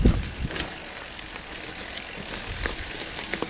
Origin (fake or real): real